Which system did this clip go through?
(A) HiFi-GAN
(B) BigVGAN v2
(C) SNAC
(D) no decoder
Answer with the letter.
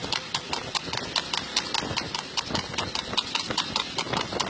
D